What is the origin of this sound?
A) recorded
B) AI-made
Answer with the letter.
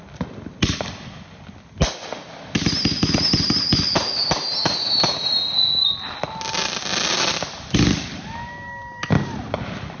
A